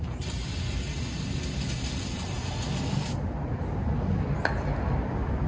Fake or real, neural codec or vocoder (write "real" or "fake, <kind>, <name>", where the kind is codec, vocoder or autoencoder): real